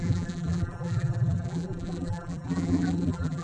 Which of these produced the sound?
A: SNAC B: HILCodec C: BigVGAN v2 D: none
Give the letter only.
C